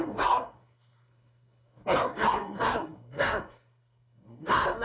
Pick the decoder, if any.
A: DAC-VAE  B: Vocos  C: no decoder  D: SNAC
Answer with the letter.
D